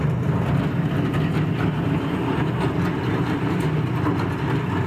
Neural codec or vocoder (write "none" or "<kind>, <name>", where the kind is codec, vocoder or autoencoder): none